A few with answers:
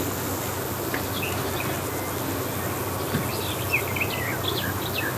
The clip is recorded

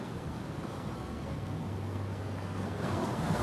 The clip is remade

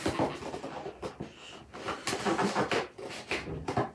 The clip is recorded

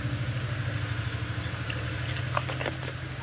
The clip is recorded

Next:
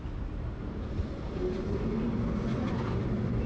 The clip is recorded